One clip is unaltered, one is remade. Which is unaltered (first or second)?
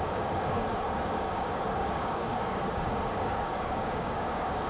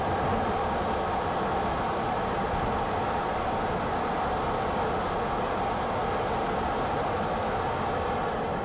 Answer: second